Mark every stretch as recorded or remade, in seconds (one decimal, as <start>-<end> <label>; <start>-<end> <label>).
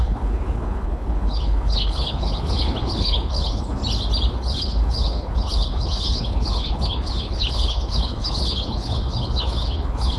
0.0-3.8 remade; 3.8-4.3 recorded; 4.3-10.2 remade